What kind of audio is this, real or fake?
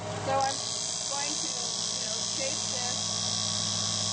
real